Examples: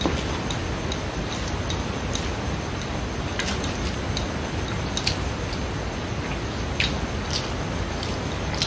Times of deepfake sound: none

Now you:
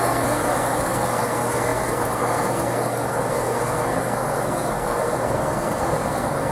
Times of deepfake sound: 0.0-6.5 (codec, SNAC)

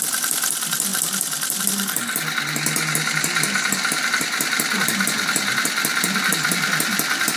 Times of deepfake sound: none

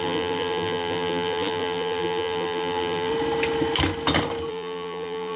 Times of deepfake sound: 0.0-3.1 (vocoder, BigVGAN v2); 4.5-5.4